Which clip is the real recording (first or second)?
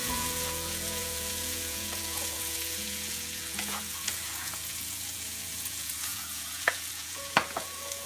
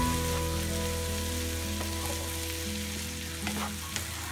second